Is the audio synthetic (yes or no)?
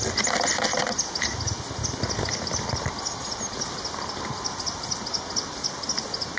no